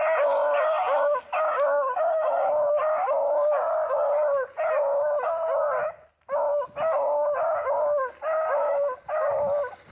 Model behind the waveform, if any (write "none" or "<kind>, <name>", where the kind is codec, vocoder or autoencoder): none